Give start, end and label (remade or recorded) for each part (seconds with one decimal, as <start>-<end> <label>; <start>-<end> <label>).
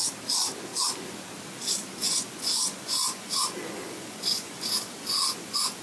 0.0-2.0 recorded; 2.0-5.8 remade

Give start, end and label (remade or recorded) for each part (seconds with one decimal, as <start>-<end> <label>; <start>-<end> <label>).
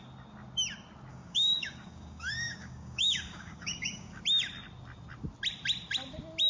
0.0-1.1 recorded; 1.1-4.2 remade; 4.2-6.5 recorded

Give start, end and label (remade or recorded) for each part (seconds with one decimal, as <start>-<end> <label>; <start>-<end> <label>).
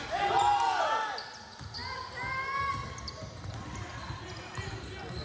0.0-5.2 recorded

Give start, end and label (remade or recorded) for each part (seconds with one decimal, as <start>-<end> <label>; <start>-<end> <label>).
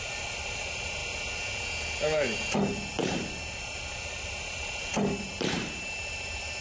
0.0-1.0 remade; 1.0-2.0 recorded; 2.0-6.6 remade